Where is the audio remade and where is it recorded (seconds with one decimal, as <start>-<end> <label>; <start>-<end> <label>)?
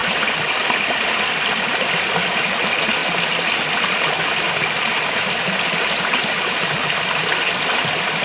0.0-3.0 remade; 3.0-4.7 recorded; 4.7-8.2 remade